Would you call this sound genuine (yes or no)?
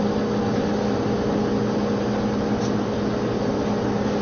yes